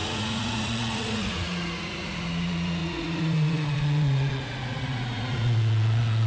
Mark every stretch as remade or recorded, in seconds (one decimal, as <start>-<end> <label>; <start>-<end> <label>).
0.0-6.3 remade